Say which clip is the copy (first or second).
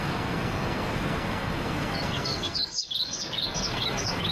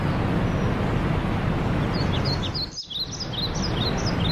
first